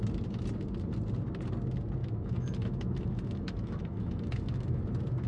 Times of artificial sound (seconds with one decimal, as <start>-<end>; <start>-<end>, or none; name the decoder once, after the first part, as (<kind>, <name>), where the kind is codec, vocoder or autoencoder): 2.0-4.8 (autoencoder, DAC-VAE)